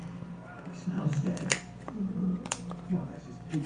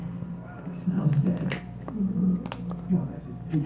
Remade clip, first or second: first